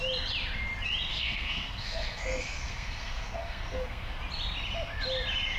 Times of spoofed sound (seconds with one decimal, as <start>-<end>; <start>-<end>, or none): 1.1-4.1

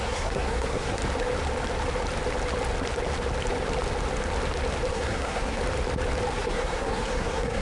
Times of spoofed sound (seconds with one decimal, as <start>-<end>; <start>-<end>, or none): 0.0-1.0; 4.9-5.6; 6.3-7.6